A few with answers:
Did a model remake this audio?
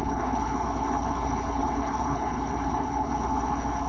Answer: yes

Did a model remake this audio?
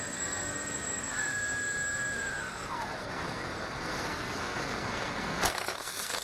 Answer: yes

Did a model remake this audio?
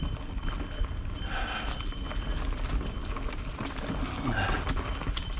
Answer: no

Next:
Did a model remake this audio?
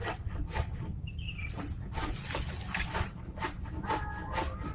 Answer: no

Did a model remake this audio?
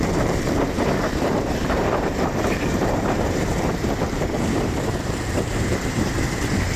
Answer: yes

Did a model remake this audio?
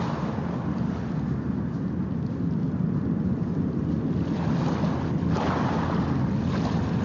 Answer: no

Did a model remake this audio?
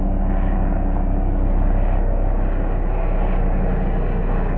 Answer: no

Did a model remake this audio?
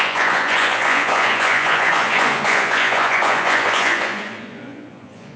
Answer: yes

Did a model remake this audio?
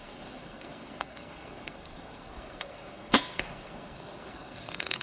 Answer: yes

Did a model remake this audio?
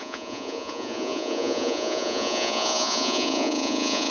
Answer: yes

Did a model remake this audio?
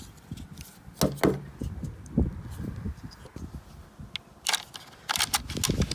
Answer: no